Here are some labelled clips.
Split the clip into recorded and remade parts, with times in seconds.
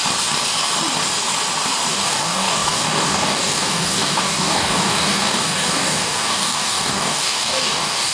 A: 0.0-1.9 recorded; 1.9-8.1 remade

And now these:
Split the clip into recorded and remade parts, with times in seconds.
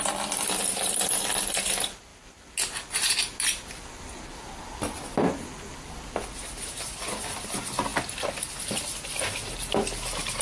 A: 0.0-10.4 recorded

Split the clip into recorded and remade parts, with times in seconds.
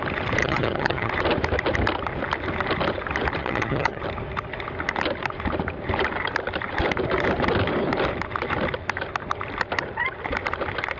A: 0.0-0.4 recorded; 0.4-1.1 remade; 1.1-3.4 recorded; 3.4-4.0 remade; 4.0-11.0 recorded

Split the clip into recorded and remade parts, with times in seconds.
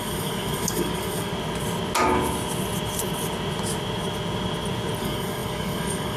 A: 0.0-1.3 remade; 1.3-5.0 recorded; 5.0-6.2 remade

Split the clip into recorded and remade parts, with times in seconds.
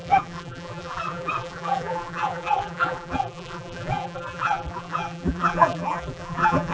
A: 0.0-6.7 remade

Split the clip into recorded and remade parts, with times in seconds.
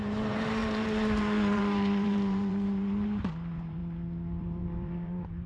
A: 0.0-3.8 remade; 3.8-4.4 recorded; 4.4-5.5 remade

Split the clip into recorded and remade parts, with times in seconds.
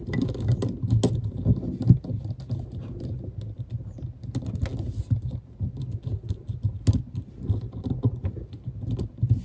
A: 0.0-9.4 recorded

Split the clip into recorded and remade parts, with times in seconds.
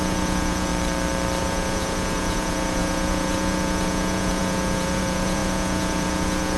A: 0.0-0.7 remade; 0.7-1.4 recorded; 1.4-6.6 remade